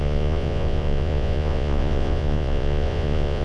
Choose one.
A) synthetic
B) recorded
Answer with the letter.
A